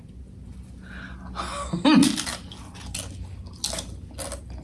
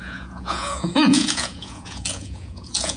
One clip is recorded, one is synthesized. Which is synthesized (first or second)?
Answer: second